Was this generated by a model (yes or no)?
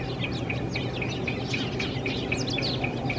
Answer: no